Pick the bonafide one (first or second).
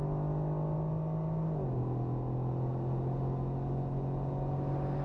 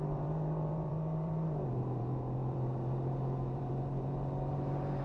first